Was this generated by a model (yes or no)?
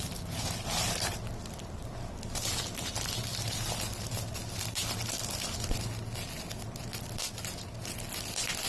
no